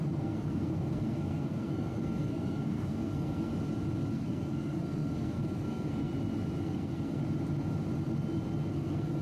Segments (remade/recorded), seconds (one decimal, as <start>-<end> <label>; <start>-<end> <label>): 0.0-3.5 remade; 3.5-4.1 recorded; 4.1-6.1 remade; 6.1-6.6 recorded; 6.6-7.2 remade; 7.2-8.7 recorded; 8.7-9.2 remade